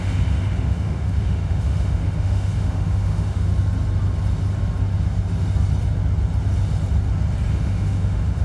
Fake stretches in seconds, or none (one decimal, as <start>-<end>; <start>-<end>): 0.0-3.5; 7.5-8.4